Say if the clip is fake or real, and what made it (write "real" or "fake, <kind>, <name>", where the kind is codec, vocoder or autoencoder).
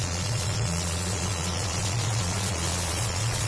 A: fake, vocoder, Vocos